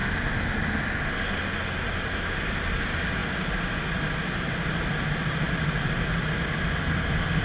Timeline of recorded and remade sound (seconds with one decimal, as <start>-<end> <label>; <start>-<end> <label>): 0.0-7.4 recorded